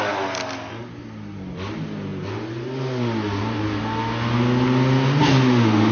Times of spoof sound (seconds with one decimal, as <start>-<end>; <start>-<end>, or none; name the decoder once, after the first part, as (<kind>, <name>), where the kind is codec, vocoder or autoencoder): none

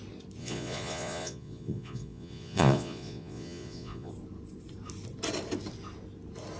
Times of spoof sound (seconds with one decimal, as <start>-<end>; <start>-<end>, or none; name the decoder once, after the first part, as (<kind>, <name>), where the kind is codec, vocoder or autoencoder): 0.4-4.1 (vocoder, Vocos)

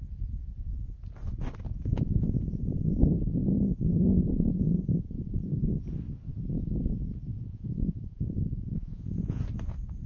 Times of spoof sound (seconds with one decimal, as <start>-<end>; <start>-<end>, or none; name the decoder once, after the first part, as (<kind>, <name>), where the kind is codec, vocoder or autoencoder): 1.9-3.0 (vocoder, Vocos); 4.2-5.7; 7.3-9.4

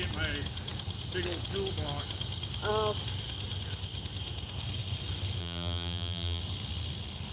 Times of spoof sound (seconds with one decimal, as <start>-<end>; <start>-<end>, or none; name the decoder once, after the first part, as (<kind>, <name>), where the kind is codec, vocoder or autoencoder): 5.4-6.4 (vocoder, BigVGAN v2)

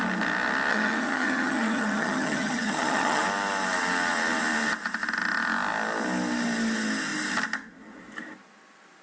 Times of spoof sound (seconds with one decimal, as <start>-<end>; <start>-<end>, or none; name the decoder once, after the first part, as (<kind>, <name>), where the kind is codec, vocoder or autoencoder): 0.7-3.2 (vocoder, HiFi-GAN)

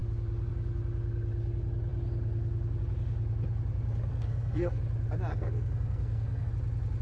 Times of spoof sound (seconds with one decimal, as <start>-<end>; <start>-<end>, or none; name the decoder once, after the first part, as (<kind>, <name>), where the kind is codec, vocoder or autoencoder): 4.1-4.8 (codec, SNAC); 5.3-6.5

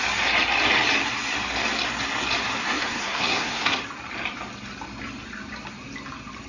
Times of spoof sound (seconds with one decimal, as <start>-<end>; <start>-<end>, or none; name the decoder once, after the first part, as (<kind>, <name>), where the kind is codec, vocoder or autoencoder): 2.6-3.8 (codec, SNAC)